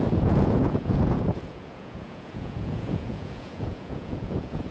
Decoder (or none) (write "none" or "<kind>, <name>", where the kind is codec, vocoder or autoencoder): vocoder, Vocos